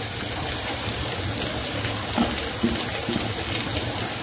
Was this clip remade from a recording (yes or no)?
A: no